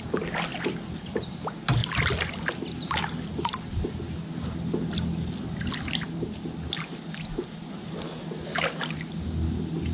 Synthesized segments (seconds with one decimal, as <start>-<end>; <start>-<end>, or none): none